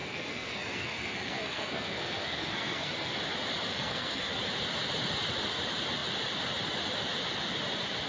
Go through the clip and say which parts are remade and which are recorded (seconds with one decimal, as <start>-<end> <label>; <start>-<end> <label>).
0.0-3.1 remade; 3.1-3.7 recorded; 3.7-4.4 remade; 4.4-8.1 recorded